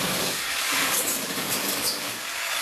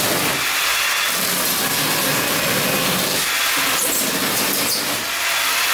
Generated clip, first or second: first